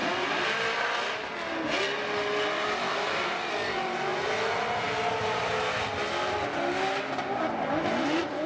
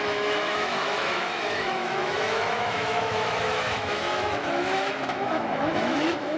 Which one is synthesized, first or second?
second